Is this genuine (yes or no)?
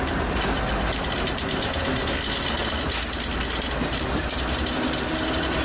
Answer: yes